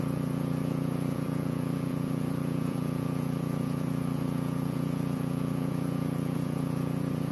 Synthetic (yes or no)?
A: yes